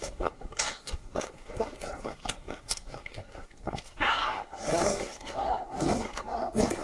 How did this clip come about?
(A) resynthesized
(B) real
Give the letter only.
A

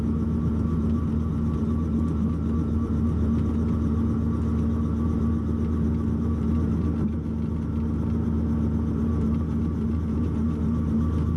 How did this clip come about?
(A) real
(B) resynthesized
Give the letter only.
A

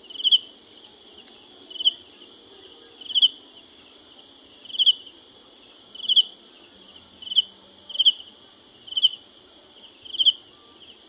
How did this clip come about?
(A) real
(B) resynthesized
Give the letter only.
A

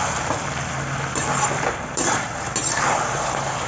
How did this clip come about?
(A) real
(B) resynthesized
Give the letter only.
A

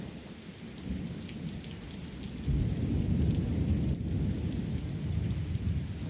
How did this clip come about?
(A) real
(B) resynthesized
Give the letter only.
A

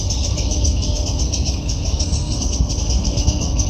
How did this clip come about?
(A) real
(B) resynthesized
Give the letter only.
B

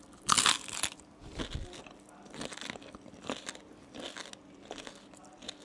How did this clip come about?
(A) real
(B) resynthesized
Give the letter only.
A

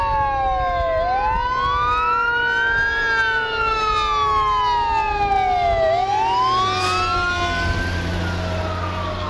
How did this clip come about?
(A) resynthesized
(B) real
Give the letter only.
B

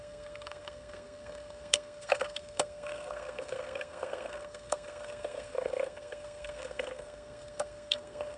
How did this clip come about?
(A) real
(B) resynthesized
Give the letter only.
B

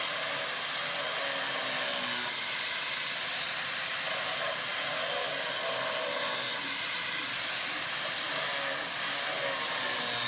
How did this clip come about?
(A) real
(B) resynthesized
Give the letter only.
A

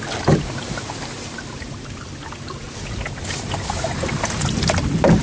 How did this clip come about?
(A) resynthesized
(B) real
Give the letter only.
B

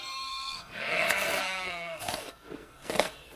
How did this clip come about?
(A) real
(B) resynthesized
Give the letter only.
B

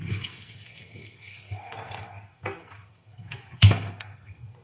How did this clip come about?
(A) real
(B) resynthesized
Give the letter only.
B